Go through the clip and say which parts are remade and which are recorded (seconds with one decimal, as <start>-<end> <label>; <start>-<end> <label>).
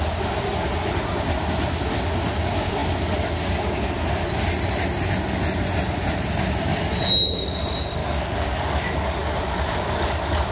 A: 0.0-8.0 recorded; 8.0-10.5 remade